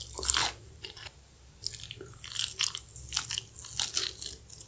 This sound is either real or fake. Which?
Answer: real